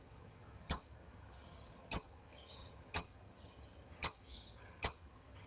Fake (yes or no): yes